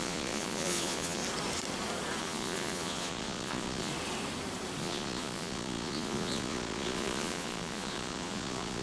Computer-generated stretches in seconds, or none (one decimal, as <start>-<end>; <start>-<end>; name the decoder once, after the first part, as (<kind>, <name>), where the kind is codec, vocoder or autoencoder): 0.0-1.2 (vocoder, Vocos); 2.2-3.9; 4.8-8.8

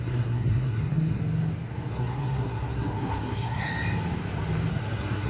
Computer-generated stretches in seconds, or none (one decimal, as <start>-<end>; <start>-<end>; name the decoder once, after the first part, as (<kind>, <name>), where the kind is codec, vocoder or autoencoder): 0.0-1.2 (codec, SNAC); 1.9-3.7; 4.7-5.3

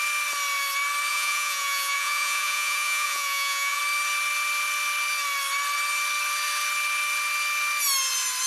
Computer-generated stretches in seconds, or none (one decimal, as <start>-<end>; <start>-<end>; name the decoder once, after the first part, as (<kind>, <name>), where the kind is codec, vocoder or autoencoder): 1.1-3.8 (vocoder, Vocos)

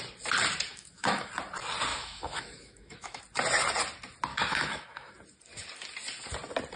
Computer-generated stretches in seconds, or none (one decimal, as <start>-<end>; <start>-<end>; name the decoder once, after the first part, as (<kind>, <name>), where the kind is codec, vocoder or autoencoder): 0.7-1.3 (autoencoder, DAC-VAE); 1.9-3.2; 4.3-5.1